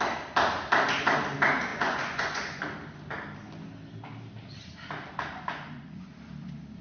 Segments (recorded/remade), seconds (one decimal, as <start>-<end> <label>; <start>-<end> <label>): 0.0-1.7 recorded; 1.7-2.6 remade; 2.6-5.3 recorded; 5.3-6.1 remade; 6.1-6.8 recorded